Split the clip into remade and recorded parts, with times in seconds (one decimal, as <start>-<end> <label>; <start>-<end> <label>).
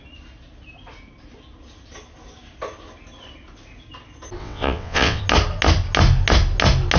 0.0-4.4 recorded; 4.4-5.2 remade; 5.2-7.0 recorded